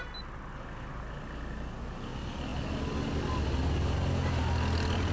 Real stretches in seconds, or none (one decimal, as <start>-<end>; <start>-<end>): 0.0-5.1